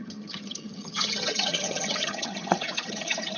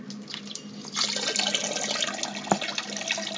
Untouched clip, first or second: second